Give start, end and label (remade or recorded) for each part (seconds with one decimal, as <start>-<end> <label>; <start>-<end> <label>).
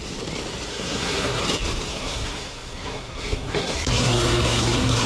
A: 0.0-0.7 recorded; 0.7-1.4 remade; 1.4-1.9 recorded; 1.9-5.1 remade